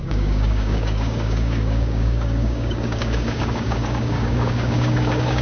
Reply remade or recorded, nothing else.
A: remade